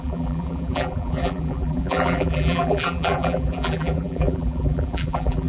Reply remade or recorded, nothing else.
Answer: remade